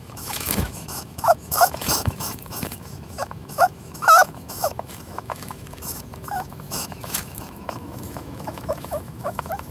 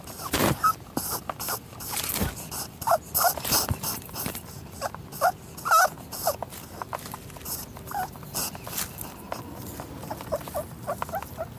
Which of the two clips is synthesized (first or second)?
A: first